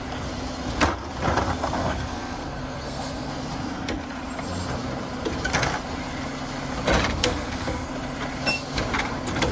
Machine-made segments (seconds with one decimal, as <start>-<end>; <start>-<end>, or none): 1.8-3.3; 7.2-7.9